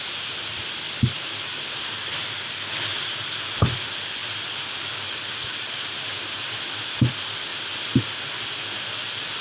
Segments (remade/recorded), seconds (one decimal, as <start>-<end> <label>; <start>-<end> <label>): 0.0-9.4 recorded